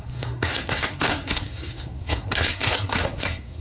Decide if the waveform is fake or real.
fake